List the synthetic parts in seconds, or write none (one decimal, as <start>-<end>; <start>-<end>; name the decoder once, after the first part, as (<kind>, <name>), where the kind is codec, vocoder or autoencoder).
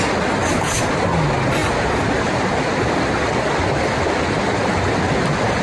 0.4-0.9 (vocoder, BigVGAN v2)